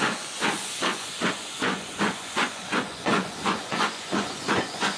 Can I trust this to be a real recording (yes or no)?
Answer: no